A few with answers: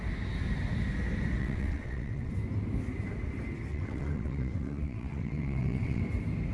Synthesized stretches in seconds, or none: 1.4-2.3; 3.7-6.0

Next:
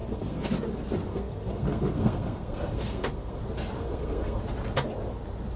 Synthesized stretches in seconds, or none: 0.0-0.5; 1.1-3.4; 3.8-4.4

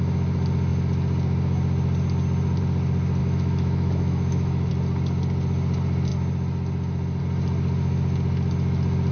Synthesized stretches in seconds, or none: 3.2-4.7

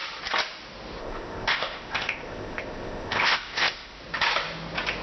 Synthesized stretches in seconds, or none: 1.0-4.0

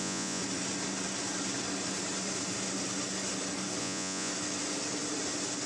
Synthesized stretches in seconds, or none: 0.0-0.4; 3.8-4.3

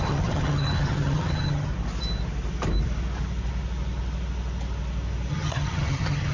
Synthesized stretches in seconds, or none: 0.0-1.7; 5.3-6.3

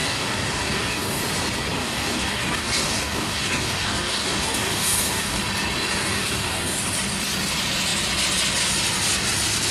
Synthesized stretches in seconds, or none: 0.0-1.2; 1.8-5.4; 5.9-6.8